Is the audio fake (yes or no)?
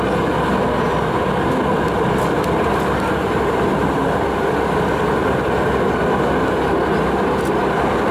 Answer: no